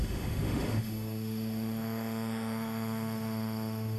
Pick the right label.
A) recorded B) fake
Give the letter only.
B